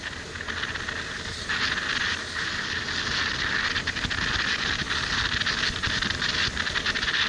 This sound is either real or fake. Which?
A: real